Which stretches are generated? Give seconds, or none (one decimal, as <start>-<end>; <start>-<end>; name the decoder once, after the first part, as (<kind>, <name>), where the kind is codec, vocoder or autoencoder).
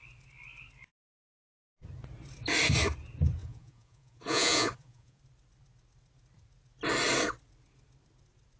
3.4-5.2 (vocoder, Vocos)